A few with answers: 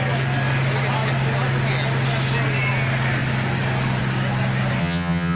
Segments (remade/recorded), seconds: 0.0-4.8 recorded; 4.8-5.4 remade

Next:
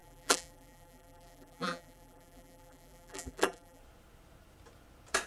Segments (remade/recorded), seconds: 0.0-3.8 remade; 3.8-5.3 recorded

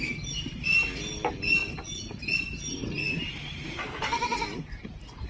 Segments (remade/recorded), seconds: 0.0-5.3 recorded

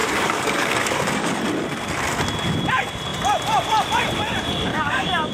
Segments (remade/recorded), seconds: 0.0-1.4 remade; 1.4-4.7 recorded; 4.7-5.3 remade

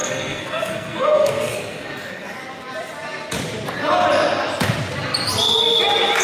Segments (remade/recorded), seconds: 0.0-2.4 remade; 2.4-6.2 recorded

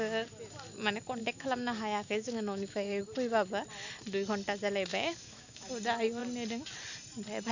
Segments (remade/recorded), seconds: 0.0-1.2 recorded; 1.2-3.0 remade; 3.0-4.9 recorded; 4.9-5.7 remade; 5.7-7.5 recorded

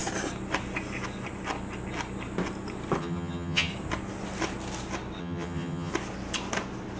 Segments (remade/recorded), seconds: 0.0-3.0 recorded; 3.0-3.7 remade; 3.7-5.2 recorded; 5.2-5.9 remade; 5.9-7.0 recorded

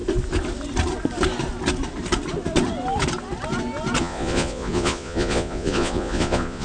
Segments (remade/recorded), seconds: 0.0-4.0 recorded; 4.0-6.6 remade